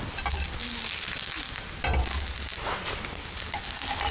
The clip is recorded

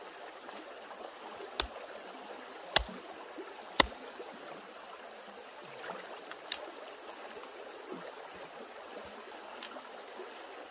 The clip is recorded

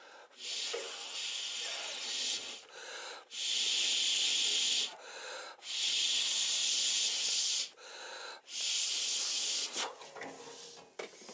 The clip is recorded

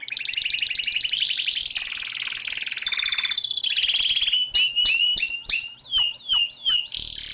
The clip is recorded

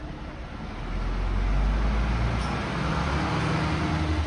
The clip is recorded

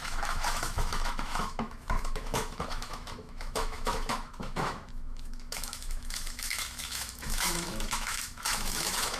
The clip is remade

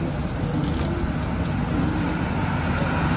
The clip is recorded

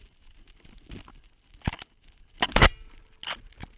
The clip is recorded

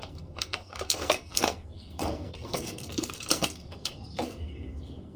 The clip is remade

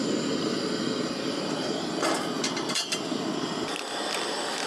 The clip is recorded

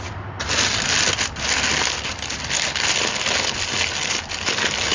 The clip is recorded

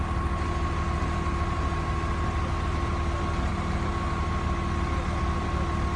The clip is recorded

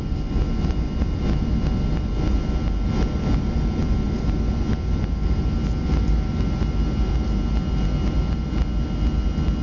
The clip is recorded